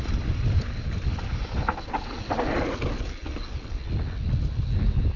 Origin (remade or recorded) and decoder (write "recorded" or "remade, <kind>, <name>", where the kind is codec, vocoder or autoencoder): recorded